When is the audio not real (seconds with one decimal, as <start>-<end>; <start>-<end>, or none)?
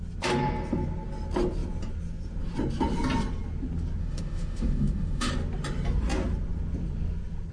4.0-5.3